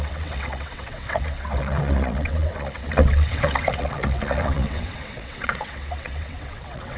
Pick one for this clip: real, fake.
fake